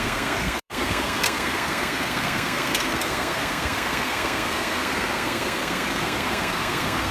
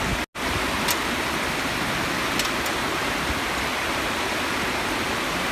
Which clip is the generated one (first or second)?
first